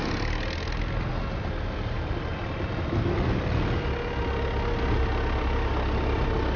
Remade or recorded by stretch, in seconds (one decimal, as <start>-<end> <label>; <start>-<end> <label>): 0.0-6.6 recorded